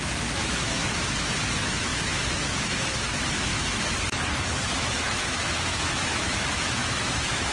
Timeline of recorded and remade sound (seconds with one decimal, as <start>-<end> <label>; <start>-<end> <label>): 0.0-7.5 remade

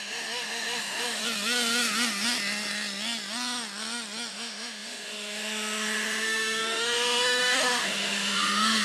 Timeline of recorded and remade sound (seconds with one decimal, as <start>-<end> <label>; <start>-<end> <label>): 0.0-1.2 remade; 1.2-4.3 recorded; 4.3-8.8 remade

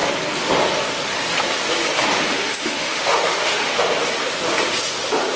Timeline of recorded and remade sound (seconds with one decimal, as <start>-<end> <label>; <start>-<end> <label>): 0.0-2.3 recorded; 2.3-3.9 remade; 3.9-5.4 recorded

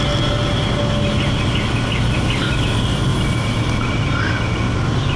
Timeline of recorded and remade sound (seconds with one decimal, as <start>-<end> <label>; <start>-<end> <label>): 0.0-5.2 recorded

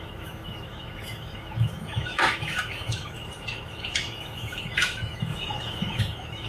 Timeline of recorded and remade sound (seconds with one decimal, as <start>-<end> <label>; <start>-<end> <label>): 0.0-6.5 remade

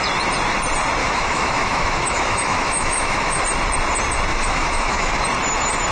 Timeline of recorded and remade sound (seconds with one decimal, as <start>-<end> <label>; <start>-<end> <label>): 0.0-1.0 recorded; 1.0-3.4 remade; 3.4-4.3 recorded; 4.3-5.2 remade; 5.2-5.9 recorded

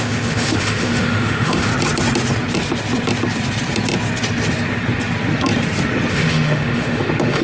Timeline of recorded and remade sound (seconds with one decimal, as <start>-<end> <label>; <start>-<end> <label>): 0.0-1.7 remade; 1.7-6.1 recorded; 6.1-7.4 remade